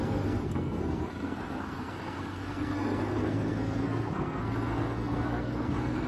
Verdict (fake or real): fake